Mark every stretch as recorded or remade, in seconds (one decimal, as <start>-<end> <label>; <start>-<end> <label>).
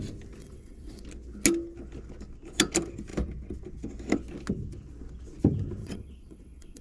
0.0-0.4 recorded; 0.4-1.0 remade; 1.0-5.8 recorded; 5.8-6.8 remade